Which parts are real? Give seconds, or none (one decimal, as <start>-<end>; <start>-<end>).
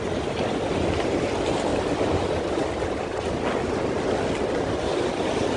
0.0-5.6